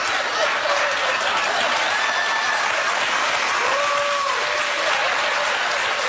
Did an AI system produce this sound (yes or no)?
no